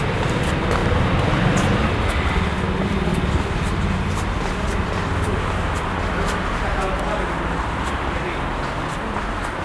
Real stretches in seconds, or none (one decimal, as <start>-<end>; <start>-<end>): 0.0-9.6